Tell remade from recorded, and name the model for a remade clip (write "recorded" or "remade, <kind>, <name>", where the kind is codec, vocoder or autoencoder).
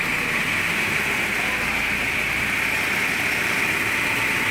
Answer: recorded